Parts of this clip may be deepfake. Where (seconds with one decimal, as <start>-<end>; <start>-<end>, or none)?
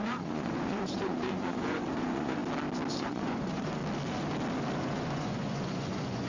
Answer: 0.0-2.4; 2.9-3.8; 4.8-6.3